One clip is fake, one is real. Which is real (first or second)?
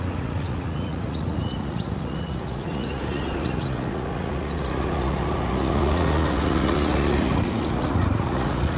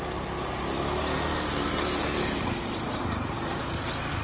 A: second